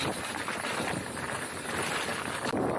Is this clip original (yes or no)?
yes